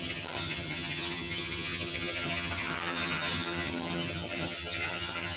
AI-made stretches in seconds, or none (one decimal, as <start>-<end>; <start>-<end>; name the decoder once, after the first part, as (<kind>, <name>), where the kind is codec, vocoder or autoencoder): 0.0-5.4 (vocoder, HiFi-GAN)